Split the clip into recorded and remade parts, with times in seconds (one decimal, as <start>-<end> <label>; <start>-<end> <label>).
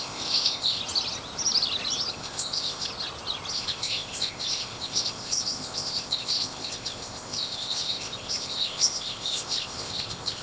0.0-0.8 remade; 0.8-2.1 recorded; 2.1-2.9 remade; 2.9-3.5 recorded; 3.5-10.4 remade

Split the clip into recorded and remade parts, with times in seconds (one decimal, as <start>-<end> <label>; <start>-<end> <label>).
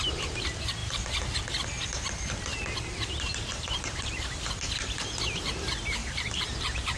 0.0-0.8 recorded; 0.8-1.4 remade; 1.4-3.5 recorded; 3.5-4.4 remade; 4.4-6.0 recorded; 6.0-7.0 remade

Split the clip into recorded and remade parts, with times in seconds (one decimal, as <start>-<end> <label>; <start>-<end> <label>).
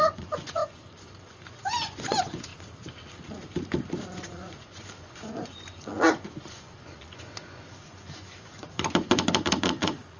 0.0-2.5 remade; 2.5-4.2 recorded; 4.2-10.2 remade